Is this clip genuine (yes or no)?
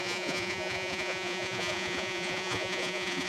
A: no